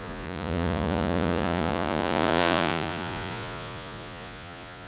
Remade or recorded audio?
remade